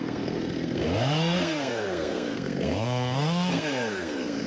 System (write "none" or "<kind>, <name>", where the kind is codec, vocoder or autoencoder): codec, SNAC